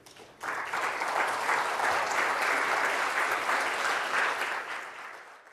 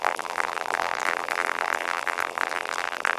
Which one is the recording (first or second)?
first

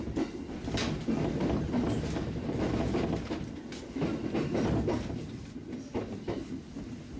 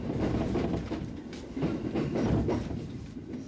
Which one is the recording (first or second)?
first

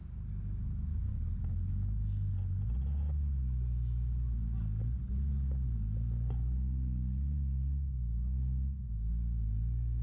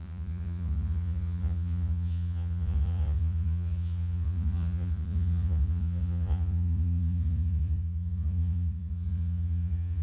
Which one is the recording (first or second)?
first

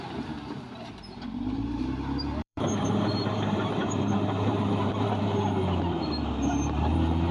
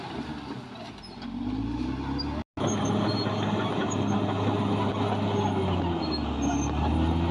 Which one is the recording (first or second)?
second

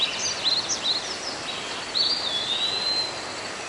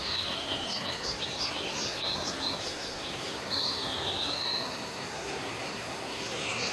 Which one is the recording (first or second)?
first